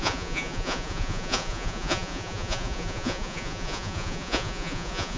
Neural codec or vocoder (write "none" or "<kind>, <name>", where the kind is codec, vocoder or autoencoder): vocoder, Vocos